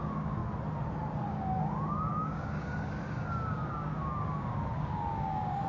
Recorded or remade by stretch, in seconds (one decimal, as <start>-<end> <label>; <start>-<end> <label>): 0.0-0.4 remade; 0.4-1.3 recorded; 1.3-5.7 remade